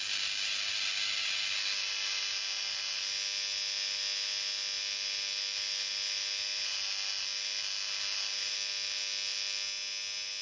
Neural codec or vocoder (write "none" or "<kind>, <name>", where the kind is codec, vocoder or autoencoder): none